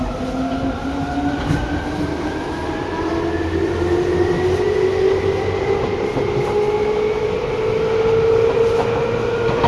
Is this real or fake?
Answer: real